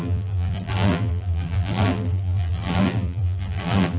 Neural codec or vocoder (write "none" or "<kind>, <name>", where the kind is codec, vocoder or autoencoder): vocoder, BigVGAN v2